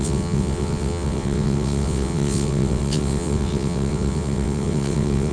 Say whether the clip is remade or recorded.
remade